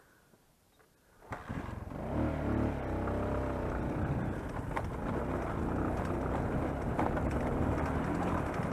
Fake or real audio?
real